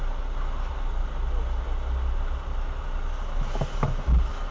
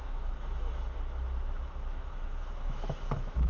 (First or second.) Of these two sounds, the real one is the first